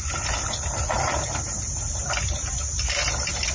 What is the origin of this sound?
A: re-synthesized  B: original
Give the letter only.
B